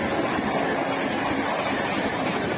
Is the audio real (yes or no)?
yes